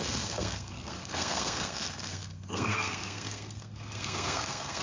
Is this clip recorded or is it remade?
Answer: remade